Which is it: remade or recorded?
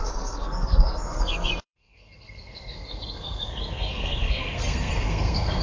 remade